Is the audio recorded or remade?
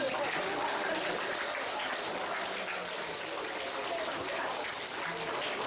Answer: recorded